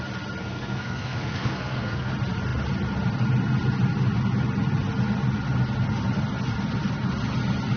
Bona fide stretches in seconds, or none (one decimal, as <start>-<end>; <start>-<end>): 0.0-0.4; 2.1-7.8